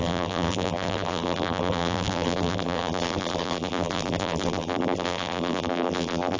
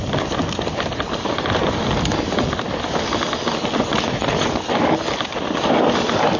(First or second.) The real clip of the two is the second